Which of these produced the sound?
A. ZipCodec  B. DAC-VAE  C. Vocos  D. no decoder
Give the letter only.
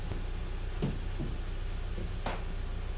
D